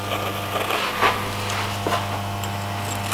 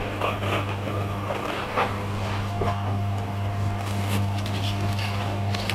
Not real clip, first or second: second